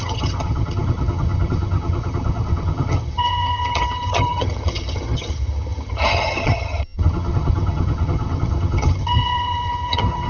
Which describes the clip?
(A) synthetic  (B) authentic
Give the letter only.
A